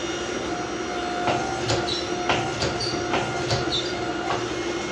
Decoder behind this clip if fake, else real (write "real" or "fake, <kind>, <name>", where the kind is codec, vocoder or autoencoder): real